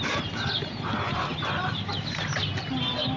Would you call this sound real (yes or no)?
yes